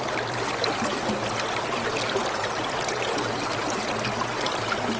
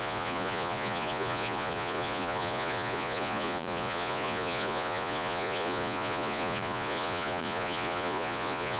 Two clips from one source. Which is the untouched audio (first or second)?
first